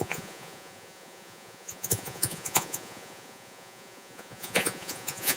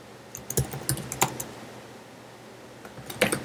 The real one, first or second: second